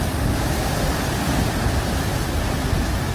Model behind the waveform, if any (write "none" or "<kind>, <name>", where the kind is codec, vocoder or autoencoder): none